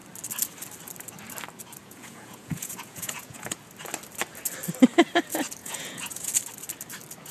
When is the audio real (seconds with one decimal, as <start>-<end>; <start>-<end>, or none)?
0.0-1.8; 3.6-5.6; 6.3-7.3